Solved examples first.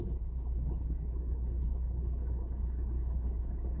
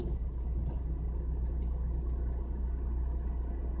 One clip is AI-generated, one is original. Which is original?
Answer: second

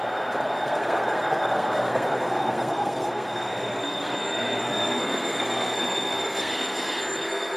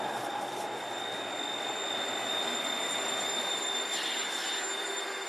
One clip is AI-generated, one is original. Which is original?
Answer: second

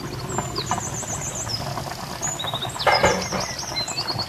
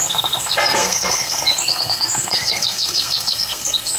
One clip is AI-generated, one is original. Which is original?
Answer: first